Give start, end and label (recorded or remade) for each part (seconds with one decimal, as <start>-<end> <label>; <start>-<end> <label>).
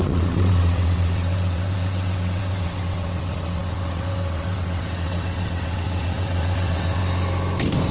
0.0-7.0 remade; 7.0-7.9 recorded